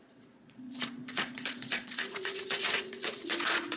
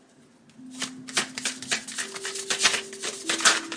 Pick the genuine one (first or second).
second